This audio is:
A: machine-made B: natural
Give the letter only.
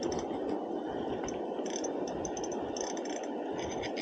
B